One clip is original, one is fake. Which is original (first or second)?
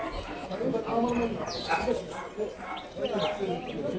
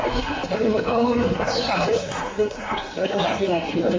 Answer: first